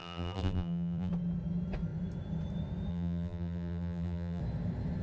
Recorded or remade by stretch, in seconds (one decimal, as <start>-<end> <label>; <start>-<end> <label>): 0.0-1.1 remade; 1.1-2.9 recorded; 2.9-4.4 remade; 4.4-5.0 recorded